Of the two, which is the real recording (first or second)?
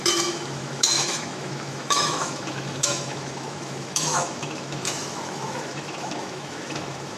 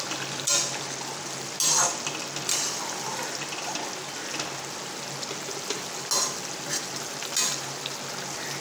second